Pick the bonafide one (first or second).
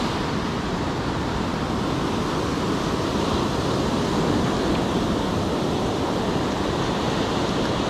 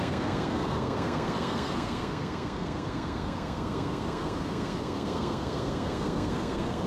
first